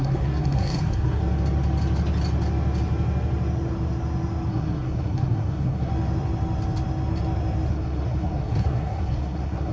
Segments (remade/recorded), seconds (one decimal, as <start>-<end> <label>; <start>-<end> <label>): 0.0-1.2 remade; 1.2-4.5 recorded; 4.5-5.9 remade; 5.9-7.7 recorded; 7.7-9.7 remade